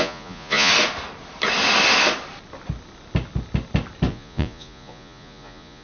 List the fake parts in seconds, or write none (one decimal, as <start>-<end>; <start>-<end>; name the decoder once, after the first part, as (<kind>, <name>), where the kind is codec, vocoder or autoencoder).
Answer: 0.0-0.7 (vocoder, Vocos); 4.1-5.8